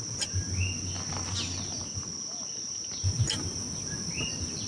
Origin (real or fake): real